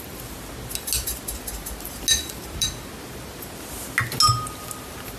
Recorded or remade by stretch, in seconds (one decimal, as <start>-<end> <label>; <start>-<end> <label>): 0.0-5.2 recorded